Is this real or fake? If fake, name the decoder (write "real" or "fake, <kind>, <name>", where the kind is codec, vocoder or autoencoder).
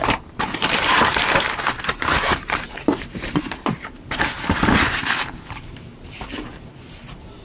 fake, vocoder, BigVGAN v2